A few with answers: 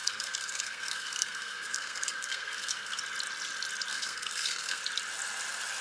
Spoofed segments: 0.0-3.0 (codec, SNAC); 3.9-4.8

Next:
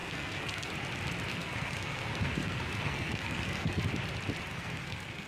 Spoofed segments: 0.0-0.7 (codec, SNAC); 1.3-3.8; 4.5-5.3